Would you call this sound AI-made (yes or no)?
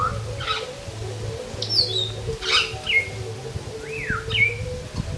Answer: no